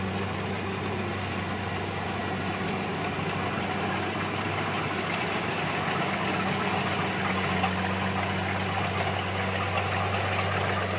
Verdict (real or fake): real